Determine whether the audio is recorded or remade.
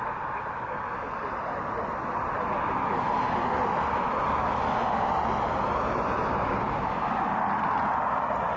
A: recorded